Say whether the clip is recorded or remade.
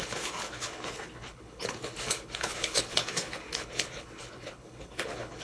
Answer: remade